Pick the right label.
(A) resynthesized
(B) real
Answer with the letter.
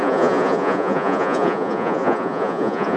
A